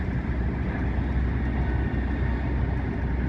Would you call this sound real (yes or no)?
yes